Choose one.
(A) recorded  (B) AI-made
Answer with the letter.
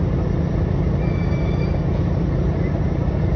A